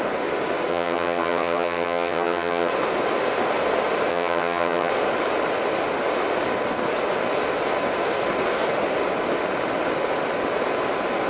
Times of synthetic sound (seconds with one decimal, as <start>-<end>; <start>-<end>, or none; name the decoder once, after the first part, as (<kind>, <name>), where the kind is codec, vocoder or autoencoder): 0.7-2.7 (vocoder, HiFi-GAN); 4.1-4.9